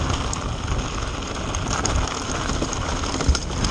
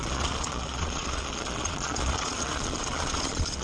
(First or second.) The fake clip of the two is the second